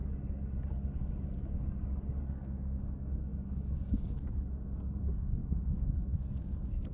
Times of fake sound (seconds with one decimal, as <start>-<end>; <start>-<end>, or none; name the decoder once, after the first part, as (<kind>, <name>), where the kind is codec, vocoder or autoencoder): 2.2-6.9 (codec, SNAC)